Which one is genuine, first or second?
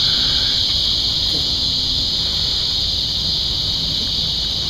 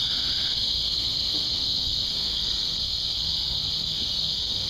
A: first